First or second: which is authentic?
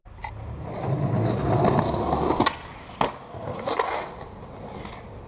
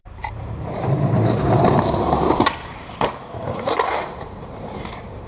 first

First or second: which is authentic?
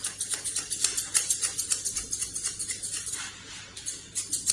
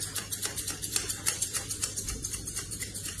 first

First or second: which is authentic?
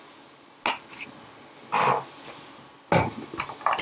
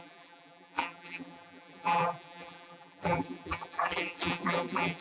first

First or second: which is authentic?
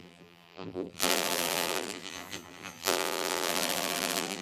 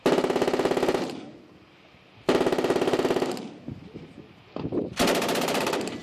second